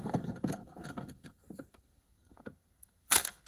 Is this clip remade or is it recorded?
remade